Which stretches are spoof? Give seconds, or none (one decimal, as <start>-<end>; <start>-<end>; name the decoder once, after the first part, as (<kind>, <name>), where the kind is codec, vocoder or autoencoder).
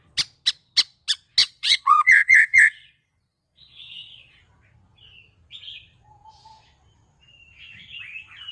1.4-4.4 (vocoder, Vocos)